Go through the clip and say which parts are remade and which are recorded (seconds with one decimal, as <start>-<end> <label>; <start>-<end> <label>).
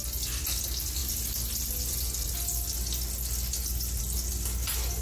0.0-5.0 recorded